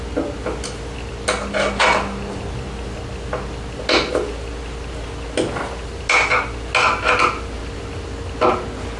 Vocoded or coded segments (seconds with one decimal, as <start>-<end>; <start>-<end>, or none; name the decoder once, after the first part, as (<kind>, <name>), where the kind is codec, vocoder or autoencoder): none